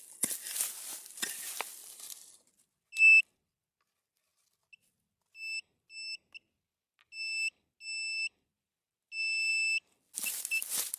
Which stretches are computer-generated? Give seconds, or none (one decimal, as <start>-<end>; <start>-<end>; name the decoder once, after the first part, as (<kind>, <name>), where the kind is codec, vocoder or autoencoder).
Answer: none